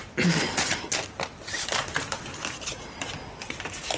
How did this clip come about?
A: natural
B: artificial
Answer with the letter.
A